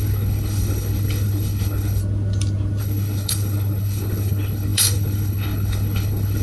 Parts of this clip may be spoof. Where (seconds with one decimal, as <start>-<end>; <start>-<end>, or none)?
0.0-2.0; 2.8-6.4